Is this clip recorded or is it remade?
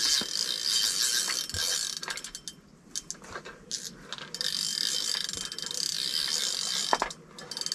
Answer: recorded